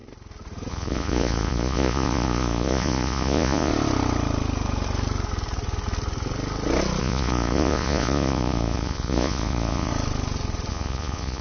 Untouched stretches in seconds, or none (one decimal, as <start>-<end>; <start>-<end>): 0.0-0.7; 3.7-7.0; 9.9-10.7